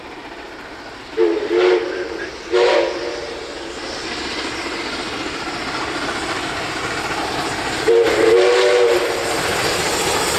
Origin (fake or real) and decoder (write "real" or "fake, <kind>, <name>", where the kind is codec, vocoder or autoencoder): real